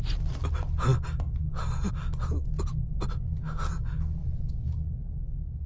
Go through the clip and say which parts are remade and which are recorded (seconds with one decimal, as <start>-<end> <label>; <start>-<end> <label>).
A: 0.0-5.7 recorded